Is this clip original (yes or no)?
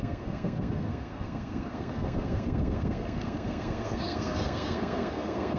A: no